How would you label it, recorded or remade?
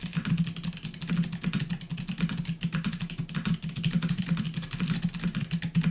recorded